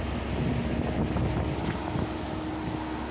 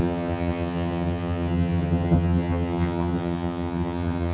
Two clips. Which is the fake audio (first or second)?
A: second